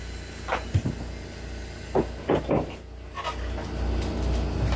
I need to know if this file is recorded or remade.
recorded